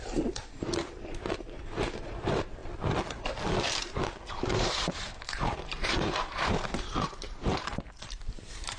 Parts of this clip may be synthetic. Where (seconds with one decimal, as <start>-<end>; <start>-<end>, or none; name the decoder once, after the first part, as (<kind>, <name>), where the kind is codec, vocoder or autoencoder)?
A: 0.0-2.6 (vocoder, BigVGAN v2); 3.7-8.8